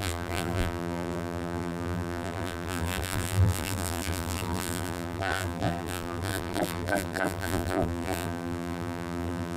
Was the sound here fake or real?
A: fake